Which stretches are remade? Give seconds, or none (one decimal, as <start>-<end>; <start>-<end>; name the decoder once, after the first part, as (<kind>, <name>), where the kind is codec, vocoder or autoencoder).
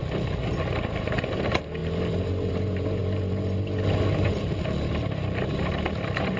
none